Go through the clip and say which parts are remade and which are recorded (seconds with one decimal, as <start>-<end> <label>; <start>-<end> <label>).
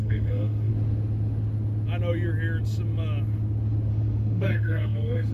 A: 0.0-0.7 remade; 0.7-3.9 recorded; 3.9-5.3 remade